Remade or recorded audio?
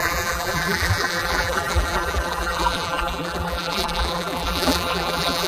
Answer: remade